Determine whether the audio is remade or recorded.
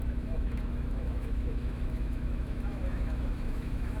remade